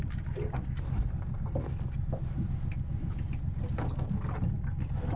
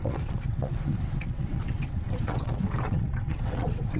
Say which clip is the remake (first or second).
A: second